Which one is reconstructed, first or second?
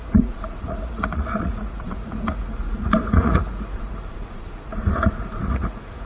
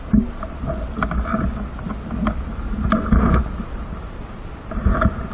first